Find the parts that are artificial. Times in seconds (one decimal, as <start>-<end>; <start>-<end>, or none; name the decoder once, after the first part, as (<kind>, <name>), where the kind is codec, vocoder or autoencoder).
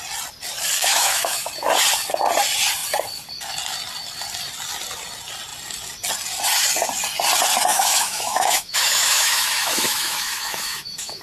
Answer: 0.8-1.5 (autoencoder, DAC-VAE); 7.7-11.2